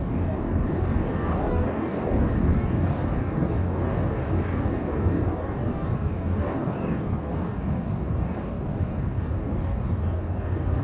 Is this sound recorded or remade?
remade